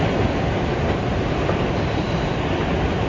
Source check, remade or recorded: recorded